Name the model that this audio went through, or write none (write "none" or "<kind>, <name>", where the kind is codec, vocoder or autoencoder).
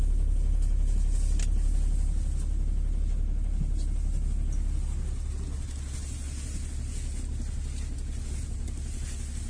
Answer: none